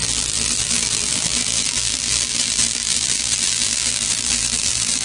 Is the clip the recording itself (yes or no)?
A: no